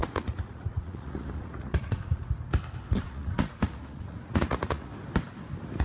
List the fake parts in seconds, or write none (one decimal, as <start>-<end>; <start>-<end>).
0.0-2.2; 3.0-4.9